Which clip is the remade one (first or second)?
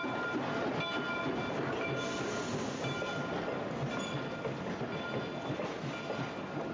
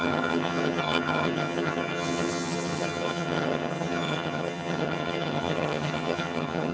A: second